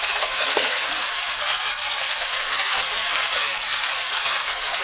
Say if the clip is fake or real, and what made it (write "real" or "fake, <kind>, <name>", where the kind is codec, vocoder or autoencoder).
fake, codec, SNAC